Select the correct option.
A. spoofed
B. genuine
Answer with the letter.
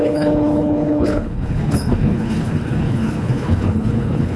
A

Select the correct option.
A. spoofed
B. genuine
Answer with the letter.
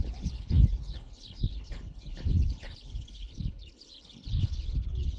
A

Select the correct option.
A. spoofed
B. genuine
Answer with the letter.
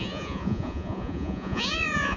A